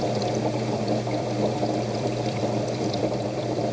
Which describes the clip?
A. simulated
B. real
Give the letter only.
A